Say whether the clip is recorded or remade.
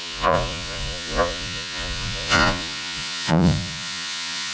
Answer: remade